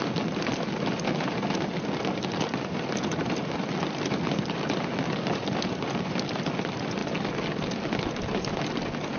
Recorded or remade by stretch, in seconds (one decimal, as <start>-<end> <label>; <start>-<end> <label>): 0.0-9.2 recorded